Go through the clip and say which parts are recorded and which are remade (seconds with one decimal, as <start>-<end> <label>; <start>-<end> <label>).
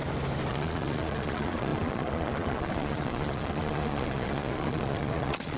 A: 0.0-0.5 recorded; 0.5-5.6 remade